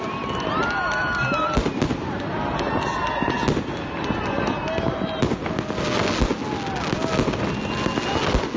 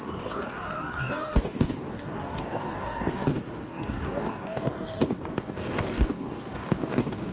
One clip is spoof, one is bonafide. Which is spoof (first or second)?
second